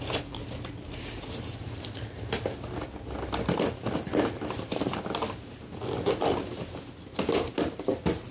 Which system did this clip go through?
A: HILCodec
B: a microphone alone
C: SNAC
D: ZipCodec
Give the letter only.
B